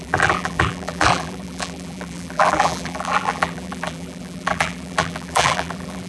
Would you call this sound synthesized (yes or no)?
yes